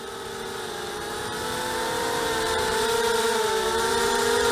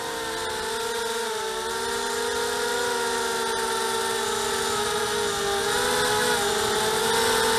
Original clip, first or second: second